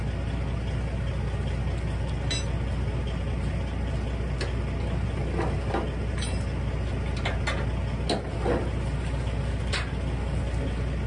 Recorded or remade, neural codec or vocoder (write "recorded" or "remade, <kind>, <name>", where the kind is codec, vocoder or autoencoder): recorded